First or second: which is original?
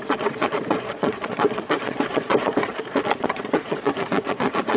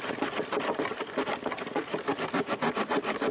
second